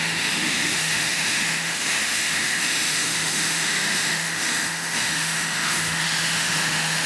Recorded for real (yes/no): no